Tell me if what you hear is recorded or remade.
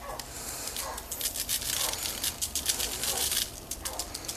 recorded